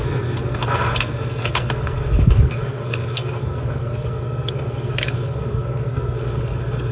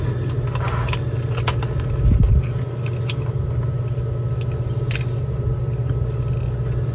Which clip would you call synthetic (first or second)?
first